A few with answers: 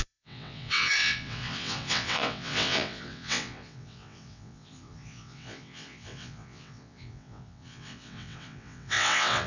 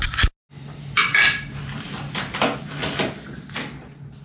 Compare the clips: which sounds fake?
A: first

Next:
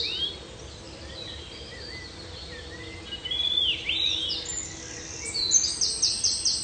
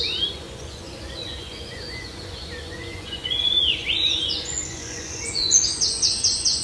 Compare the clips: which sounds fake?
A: second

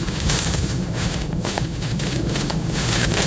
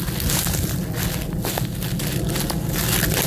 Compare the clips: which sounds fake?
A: first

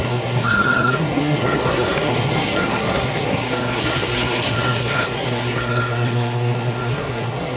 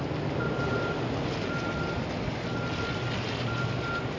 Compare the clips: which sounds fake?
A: first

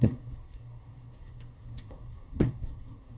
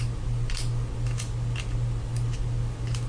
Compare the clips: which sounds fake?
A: first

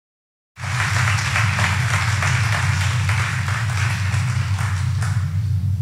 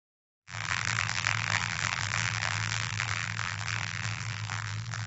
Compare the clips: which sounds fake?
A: second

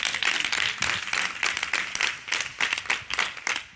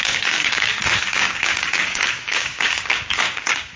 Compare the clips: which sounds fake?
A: second